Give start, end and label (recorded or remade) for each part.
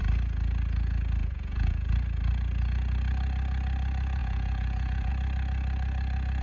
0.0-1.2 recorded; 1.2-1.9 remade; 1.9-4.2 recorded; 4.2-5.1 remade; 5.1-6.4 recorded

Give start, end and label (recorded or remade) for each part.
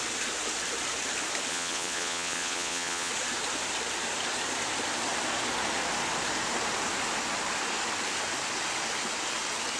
0.0-1.5 recorded; 1.5-3.1 remade; 3.1-9.8 recorded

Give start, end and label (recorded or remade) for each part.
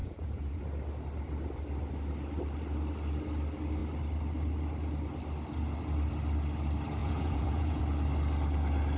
0.0-0.6 remade; 0.6-7.0 recorded; 7.0-7.8 remade; 7.8-9.0 recorded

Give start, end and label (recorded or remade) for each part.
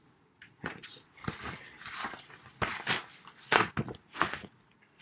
0.0-1.2 remade; 1.2-4.2 recorded; 4.2-5.0 remade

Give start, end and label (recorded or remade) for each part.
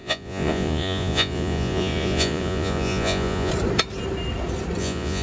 0.0-3.5 remade; 3.5-4.8 recorded; 4.8-5.2 remade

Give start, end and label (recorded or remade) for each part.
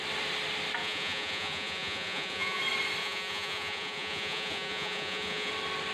0.0-0.8 recorded; 0.8-2.6 remade; 2.6-3.0 recorded; 3.0-5.5 remade; 5.5-5.9 recorded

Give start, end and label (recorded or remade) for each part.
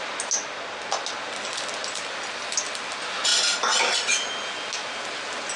0.0-5.6 recorded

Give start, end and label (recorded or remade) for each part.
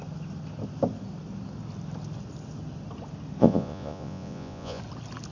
0.0-3.4 recorded; 3.4-4.8 remade; 4.8-5.3 recorded